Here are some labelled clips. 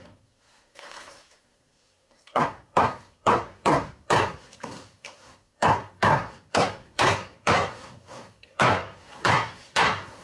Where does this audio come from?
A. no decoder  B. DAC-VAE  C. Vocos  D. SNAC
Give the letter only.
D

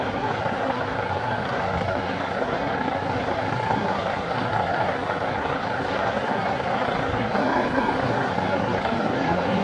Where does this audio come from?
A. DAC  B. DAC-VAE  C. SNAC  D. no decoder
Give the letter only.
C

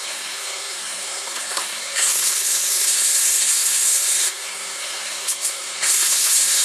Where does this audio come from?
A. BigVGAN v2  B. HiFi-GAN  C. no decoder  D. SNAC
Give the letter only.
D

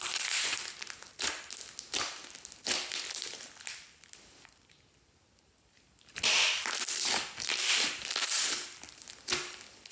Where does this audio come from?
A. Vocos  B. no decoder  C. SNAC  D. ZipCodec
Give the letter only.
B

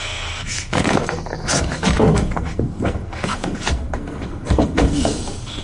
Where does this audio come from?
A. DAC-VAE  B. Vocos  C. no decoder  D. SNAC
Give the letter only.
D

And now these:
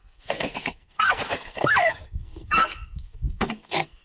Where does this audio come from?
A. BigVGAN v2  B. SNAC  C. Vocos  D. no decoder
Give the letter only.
B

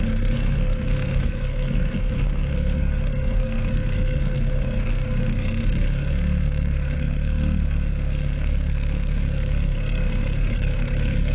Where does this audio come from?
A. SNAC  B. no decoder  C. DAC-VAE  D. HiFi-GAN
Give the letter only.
A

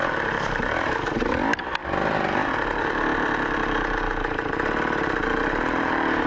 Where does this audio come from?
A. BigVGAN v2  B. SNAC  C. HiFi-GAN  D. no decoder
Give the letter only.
D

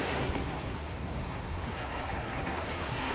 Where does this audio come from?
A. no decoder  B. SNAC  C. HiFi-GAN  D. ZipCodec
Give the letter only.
B